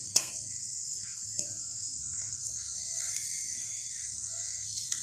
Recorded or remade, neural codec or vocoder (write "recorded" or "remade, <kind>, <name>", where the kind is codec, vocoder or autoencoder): remade, codec, SNAC